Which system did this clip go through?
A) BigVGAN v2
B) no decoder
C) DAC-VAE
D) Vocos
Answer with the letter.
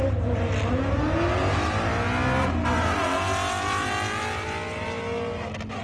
B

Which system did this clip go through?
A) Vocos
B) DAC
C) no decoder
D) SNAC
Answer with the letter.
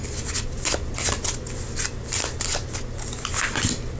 C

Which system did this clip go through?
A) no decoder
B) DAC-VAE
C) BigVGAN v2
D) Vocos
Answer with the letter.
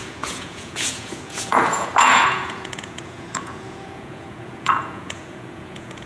D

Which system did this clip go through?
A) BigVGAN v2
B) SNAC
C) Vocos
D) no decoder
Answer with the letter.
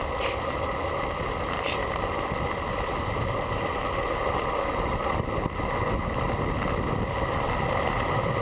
D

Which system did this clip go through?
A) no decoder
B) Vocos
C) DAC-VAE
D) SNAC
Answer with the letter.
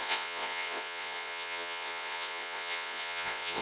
B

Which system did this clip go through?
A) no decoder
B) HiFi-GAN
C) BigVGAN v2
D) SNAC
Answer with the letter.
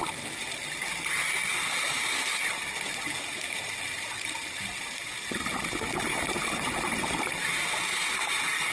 A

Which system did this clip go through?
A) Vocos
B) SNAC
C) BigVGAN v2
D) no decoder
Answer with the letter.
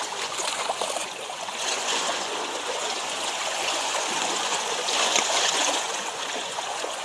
A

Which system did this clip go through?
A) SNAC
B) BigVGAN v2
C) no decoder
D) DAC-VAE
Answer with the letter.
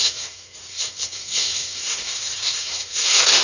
A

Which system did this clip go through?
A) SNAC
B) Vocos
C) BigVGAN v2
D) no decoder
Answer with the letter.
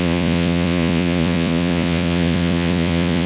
B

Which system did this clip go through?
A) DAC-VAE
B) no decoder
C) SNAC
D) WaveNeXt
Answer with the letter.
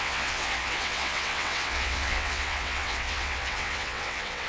D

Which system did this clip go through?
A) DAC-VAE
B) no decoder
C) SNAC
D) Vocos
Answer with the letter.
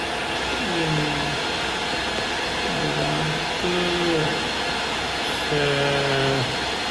B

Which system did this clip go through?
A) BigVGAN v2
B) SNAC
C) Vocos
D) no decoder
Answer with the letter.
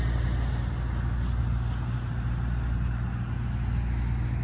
D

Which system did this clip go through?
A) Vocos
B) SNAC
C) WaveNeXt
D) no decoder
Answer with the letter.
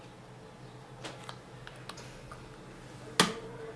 D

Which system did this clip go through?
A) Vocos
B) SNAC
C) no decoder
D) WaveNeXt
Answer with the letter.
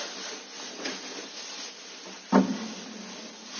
C